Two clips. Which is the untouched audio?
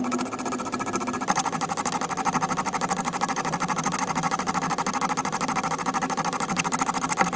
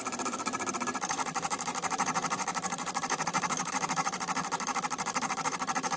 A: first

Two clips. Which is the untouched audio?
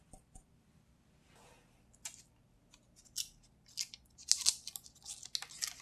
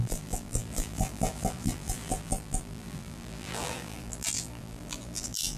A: first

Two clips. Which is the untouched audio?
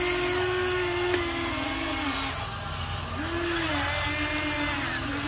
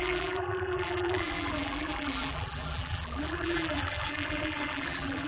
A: first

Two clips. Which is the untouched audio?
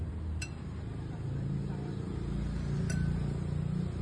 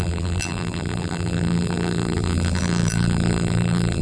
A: first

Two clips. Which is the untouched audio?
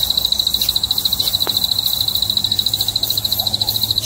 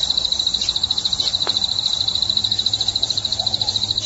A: first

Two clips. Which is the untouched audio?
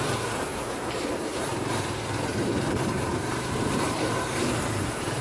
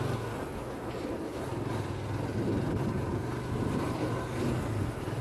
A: second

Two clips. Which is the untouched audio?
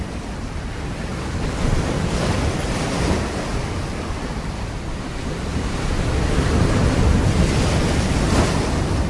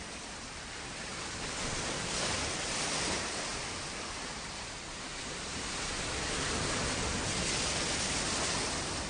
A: second